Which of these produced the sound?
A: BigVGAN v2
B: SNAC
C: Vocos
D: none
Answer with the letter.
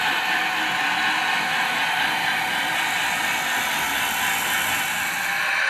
D